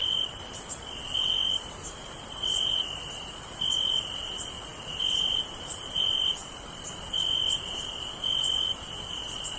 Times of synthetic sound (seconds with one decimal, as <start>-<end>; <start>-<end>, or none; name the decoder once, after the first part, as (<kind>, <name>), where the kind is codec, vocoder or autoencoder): none